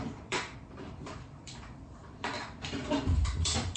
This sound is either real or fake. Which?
fake